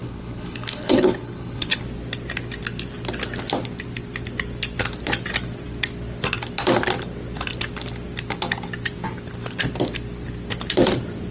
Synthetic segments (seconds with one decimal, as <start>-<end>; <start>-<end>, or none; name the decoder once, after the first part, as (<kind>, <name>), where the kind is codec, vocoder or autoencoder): 0.0-1.8 (codec, HILCodec)